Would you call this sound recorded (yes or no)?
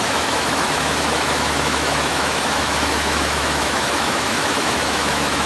no